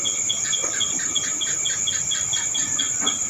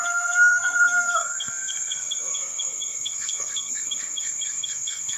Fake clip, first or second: second